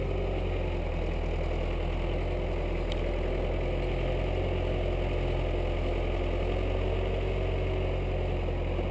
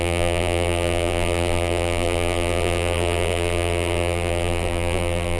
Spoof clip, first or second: second